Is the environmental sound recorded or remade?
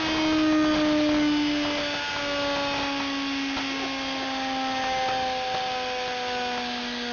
recorded